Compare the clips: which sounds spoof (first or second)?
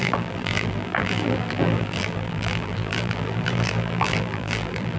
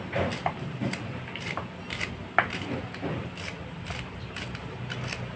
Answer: first